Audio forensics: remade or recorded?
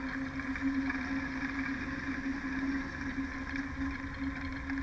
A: recorded